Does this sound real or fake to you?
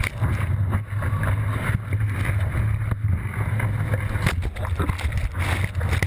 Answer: real